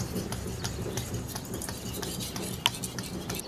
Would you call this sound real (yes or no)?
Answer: yes